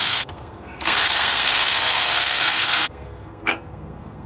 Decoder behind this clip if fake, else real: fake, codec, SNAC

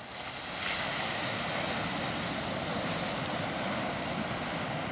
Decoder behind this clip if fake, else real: real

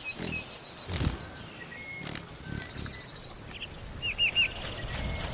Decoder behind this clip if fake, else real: real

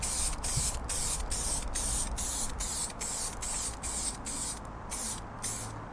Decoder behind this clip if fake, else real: real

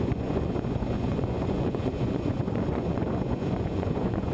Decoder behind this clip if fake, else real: fake, vocoder, Vocos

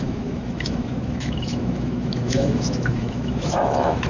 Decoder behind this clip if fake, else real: fake, autoencoder, DAC-VAE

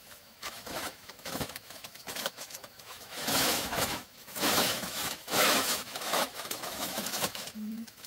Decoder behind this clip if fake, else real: fake, autoencoder, DAC-VAE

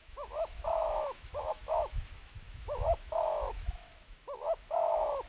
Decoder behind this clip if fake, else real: fake, autoencoder, DAC-VAE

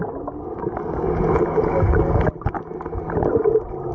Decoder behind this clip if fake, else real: real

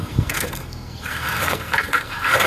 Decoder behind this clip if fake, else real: fake, codec, SNAC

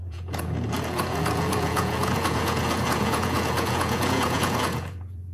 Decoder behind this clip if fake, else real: fake, vocoder, Vocos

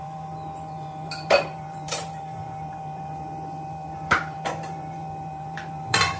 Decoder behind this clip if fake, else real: fake, vocoder, BigVGAN v2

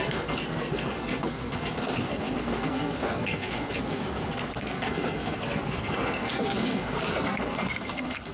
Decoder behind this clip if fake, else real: fake, codec, SNAC